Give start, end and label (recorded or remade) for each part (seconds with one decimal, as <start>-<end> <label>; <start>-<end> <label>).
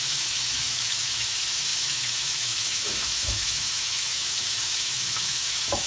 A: 0.0-5.9 remade